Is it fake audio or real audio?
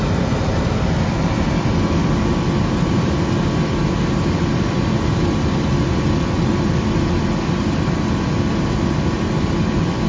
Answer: real